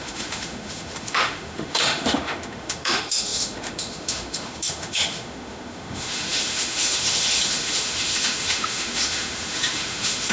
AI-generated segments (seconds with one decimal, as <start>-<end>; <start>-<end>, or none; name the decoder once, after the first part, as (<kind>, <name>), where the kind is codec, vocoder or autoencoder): 0.0-10.3 (autoencoder, DAC-VAE)